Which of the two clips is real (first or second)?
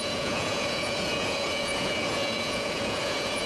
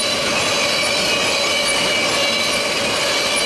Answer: second